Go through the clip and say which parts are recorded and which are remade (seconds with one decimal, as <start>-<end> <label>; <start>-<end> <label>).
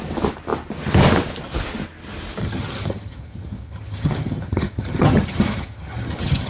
0.0-2.4 recorded; 2.4-6.5 remade